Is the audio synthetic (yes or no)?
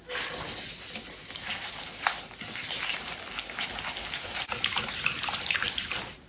no